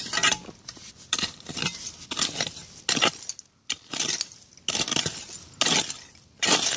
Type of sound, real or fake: real